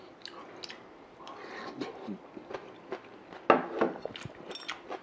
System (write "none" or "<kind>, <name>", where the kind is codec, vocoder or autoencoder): none